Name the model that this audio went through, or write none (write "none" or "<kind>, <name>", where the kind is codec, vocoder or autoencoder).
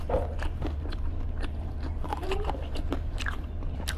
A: vocoder, BigVGAN v2